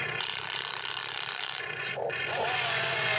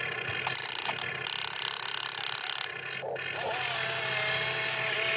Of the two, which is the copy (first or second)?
first